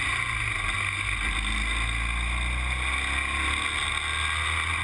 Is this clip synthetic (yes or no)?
no